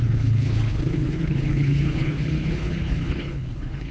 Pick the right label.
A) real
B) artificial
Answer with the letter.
B